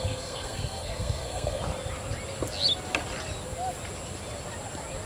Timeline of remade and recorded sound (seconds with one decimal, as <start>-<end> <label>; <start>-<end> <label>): 0.0-1.6 remade; 1.6-5.1 recorded